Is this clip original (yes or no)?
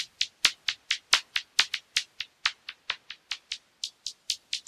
yes